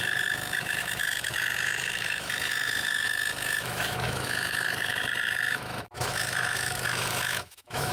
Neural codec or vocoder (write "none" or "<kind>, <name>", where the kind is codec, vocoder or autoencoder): autoencoder, DAC-VAE